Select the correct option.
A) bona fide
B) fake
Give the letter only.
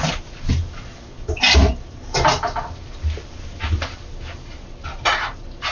A